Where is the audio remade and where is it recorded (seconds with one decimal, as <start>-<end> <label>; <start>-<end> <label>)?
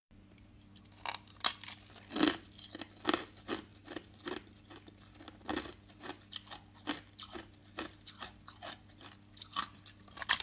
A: 0.0-0.8 remade; 0.8-10.4 recorded